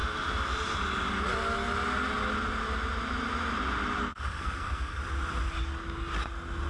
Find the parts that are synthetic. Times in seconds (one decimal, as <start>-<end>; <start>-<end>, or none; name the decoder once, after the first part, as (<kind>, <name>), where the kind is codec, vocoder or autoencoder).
4.0-5.0 (codec, SNAC)